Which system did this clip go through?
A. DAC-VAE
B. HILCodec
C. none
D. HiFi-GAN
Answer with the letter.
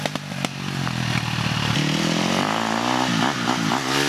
C